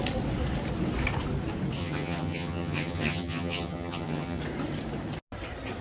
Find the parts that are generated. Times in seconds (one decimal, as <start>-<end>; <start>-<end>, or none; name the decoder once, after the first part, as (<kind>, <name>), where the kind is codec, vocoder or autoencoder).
1.8-4.4 (vocoder, HiFi-GAN)